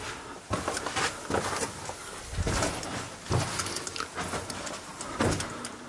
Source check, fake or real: real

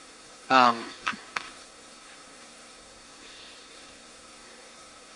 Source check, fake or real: fake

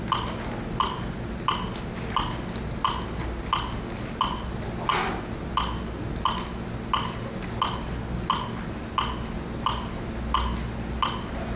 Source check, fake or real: real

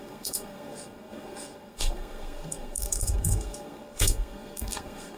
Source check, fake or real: fake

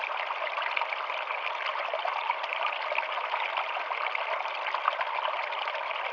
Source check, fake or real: real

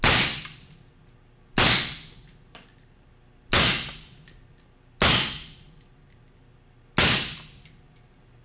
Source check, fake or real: real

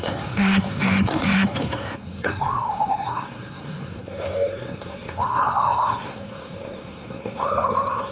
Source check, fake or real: fake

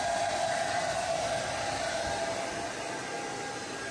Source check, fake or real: real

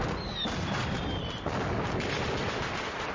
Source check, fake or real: real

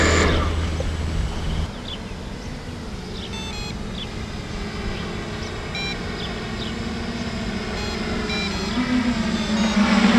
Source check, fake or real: real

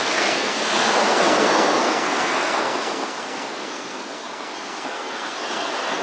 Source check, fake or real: fake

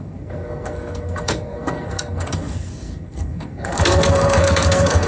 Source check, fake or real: fake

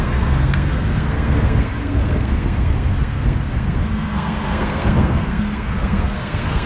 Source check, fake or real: fake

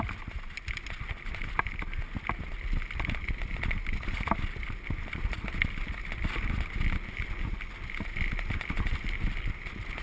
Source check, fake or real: real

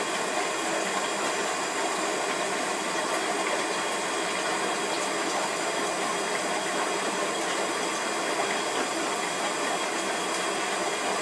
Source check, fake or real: real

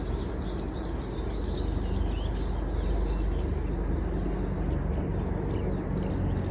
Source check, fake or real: real